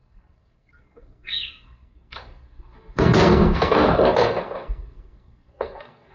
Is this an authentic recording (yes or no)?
no